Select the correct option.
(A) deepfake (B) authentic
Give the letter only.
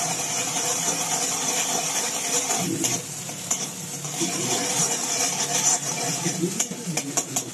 A